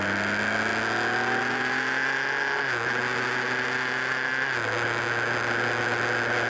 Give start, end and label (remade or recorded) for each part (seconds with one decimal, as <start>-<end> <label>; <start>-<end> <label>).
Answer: 0.0-6.5 recorded